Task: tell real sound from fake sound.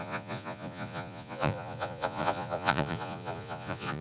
fake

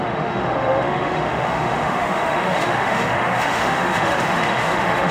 fake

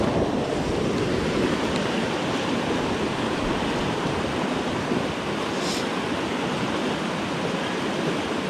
real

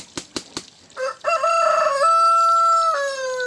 real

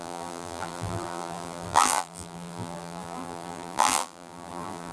fake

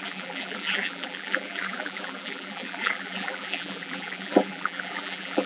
fake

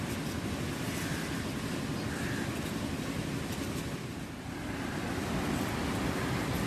real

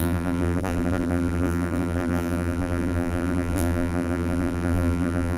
fake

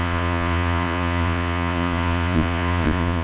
fake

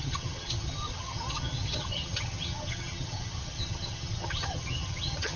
fake